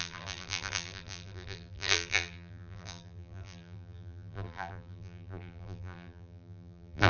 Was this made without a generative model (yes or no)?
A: no